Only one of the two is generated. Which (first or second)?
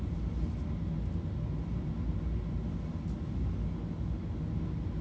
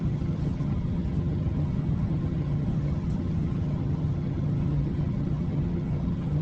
second